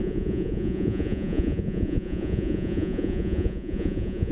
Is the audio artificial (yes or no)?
yes